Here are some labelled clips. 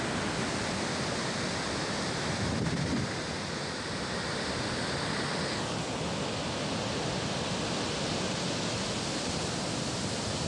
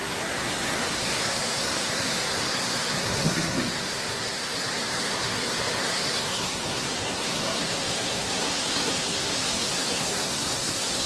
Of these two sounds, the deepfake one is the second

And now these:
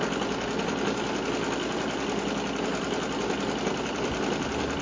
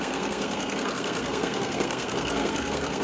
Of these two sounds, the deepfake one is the second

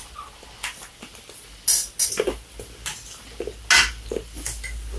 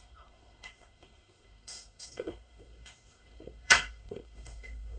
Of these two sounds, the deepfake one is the second